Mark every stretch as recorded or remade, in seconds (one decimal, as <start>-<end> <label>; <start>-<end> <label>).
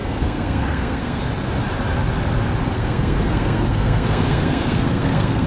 0.0-1.2 remade; 1.2-2.7 recorded; 2.7-5.5 remade